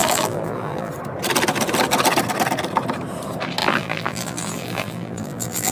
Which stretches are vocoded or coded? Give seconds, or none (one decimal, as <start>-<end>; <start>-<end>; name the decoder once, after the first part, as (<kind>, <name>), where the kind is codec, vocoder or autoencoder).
0.0-0.9 (vocoder, BigVGAN v2); 3.6-5.7